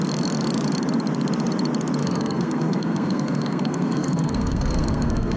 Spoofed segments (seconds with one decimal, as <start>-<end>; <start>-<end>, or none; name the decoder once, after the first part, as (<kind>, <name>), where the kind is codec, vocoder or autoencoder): 2.0-5.4 (codec, SNAC)